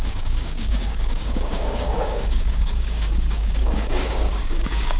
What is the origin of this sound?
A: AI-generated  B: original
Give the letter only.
A